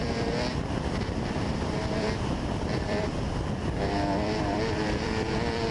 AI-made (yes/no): yes